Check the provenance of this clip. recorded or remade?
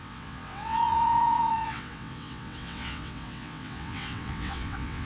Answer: remade